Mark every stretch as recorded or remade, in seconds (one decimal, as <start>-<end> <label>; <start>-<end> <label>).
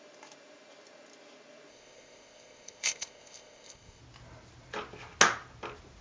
0.0-1.7 recorded; 1.7-4.0 remade; 4.0-6.0 recorded